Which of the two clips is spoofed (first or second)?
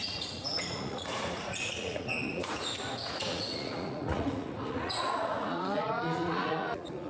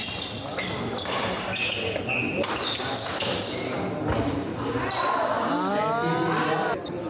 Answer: first